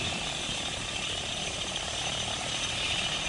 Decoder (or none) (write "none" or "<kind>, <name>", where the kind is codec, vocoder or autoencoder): vocoder, BigVGAN v2